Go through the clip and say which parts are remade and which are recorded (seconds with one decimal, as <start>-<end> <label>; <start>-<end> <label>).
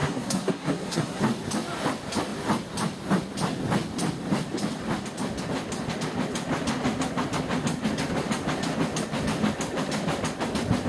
0.0-1.2 remade; 1.2-10.9 recorded